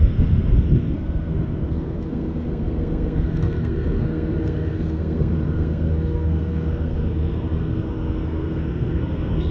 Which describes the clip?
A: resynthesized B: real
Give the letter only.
A